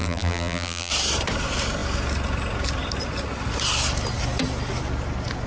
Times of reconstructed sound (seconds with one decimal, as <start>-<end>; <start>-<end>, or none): 0.0-0.9